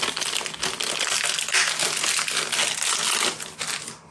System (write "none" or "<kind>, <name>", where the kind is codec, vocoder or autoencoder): none